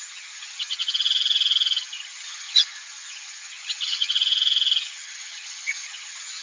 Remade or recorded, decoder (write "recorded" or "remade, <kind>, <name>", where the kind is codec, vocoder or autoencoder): remade, vocoder, HiFi-GAN